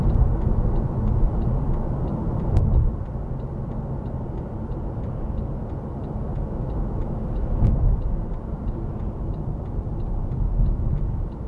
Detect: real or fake fake